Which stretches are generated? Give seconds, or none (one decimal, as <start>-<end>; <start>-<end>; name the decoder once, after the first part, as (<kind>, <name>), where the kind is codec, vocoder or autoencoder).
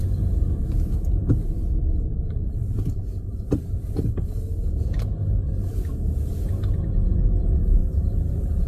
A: 0.0-3.6 (vocoder, BigVGAN v2); 7.8-8.7